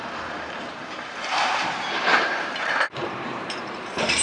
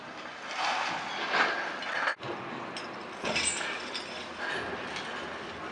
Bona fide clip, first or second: second